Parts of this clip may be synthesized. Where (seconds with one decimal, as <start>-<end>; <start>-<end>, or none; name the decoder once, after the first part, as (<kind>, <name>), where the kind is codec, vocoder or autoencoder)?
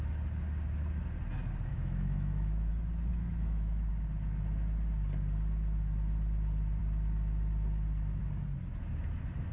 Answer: 1.7-2.7 (autoencoder, DAC-VAE); 3.1-3.9